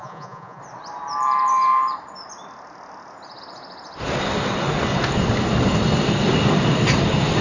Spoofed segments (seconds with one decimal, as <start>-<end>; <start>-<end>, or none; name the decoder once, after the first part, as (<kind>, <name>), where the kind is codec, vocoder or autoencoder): 0.0-0.6 (vocoder, Vocos)